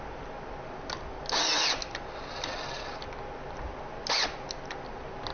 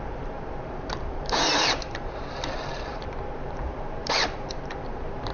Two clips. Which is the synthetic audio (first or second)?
second